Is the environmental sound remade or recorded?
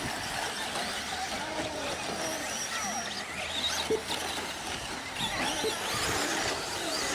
recorded